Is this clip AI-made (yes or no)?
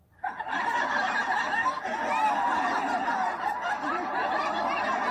no